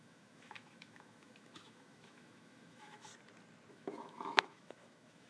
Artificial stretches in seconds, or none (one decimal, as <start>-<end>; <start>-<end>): 0.0-3.1; 3.7-5.3